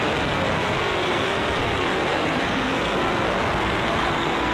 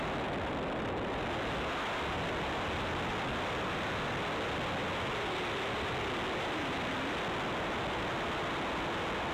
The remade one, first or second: first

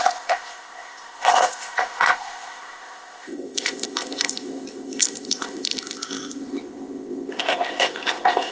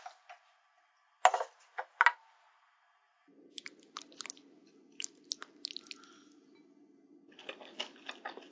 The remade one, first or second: first